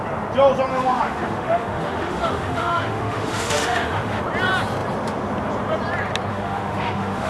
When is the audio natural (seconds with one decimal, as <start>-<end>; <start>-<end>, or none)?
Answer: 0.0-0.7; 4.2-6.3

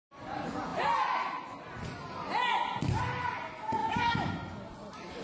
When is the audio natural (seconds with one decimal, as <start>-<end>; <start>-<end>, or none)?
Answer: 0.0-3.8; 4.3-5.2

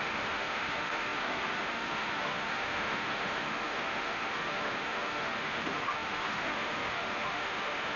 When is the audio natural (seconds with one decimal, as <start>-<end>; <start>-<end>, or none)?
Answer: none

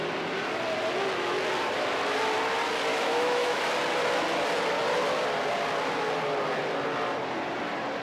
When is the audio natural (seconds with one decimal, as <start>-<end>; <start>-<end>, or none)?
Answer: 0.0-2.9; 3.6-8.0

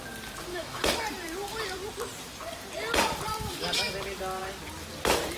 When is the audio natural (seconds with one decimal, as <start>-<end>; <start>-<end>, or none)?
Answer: 0.0-0.5; 1.0-3.3; 3.9-5.4

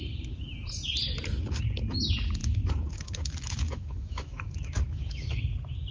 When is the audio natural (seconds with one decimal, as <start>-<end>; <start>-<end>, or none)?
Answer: 0.0-2.4; 5.4-5.9

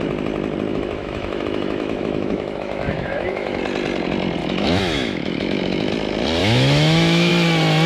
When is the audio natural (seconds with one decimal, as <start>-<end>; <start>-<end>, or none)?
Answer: 0.0-0.7; 3.6-4.4; 5.9-6.4; 7.3-7.9

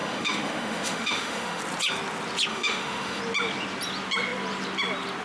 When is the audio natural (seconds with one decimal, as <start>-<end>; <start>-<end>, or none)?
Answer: 1.6-2.5; 3.2-5.2